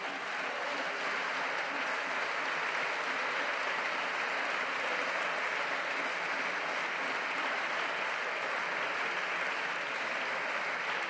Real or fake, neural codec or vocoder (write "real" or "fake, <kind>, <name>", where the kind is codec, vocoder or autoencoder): real